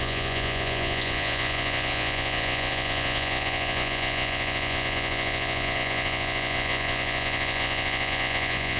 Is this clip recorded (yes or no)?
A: no